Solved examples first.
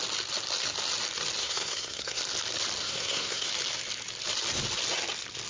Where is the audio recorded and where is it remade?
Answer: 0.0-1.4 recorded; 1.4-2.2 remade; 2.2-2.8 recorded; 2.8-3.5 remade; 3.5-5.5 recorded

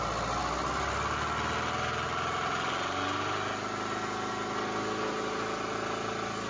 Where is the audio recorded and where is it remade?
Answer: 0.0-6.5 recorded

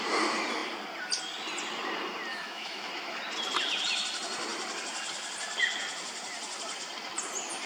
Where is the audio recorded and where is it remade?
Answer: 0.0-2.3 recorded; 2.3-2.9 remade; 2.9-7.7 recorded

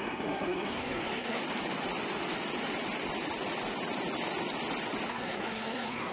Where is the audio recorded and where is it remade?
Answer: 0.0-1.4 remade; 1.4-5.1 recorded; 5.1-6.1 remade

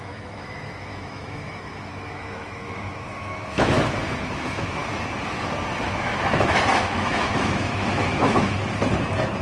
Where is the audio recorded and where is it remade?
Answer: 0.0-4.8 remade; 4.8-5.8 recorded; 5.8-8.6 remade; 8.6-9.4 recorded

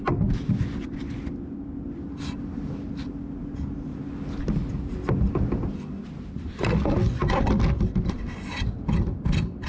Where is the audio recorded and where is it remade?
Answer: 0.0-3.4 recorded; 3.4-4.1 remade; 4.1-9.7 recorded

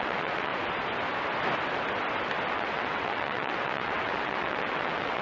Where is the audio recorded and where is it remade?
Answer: 0.0-0.5 remade; 0.5-2.5 recorded; 2.5-5.2 remade

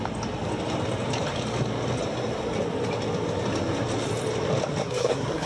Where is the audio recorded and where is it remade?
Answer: 0.0-4.8 recorded; 4.8-5.5 remade